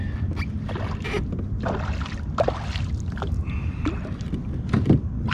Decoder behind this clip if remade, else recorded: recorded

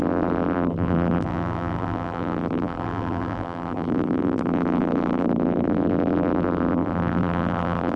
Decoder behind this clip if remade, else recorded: remade, vocoder, BigVGAN v2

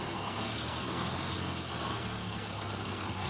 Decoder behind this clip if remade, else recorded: remade, codec, SNAC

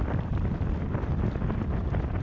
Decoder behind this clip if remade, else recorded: recorded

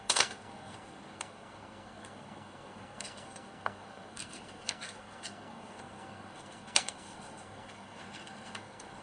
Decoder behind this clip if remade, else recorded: remade, codec, SNAC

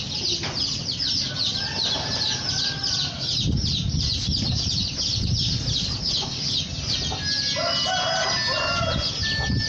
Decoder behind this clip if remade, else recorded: recorded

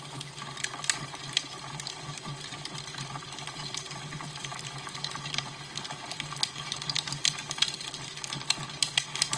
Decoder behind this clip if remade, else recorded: recorded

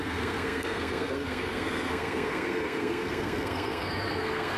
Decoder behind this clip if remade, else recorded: remade, codec, SNAC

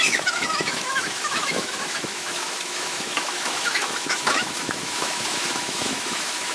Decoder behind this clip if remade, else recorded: remade, autoencoder, DAC-VAE